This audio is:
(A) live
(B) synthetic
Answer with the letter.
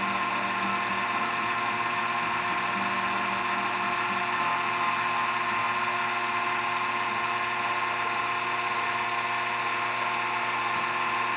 A